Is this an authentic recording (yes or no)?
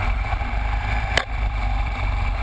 no